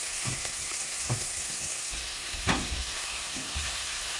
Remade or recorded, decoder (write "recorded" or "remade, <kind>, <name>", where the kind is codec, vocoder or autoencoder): remade, codec, SNAC